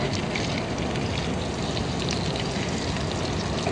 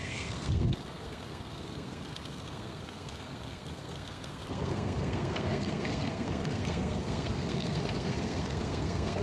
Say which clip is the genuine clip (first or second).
first